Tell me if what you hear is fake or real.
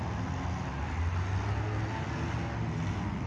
real